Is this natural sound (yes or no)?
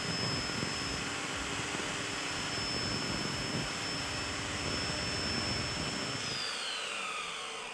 yes